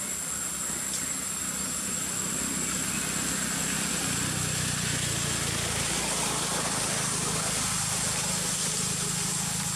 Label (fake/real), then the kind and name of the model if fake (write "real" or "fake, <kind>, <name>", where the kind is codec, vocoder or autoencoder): real